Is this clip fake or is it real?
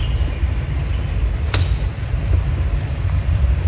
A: real